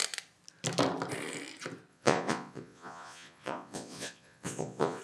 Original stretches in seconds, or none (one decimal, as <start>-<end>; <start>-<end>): 0.0-1.9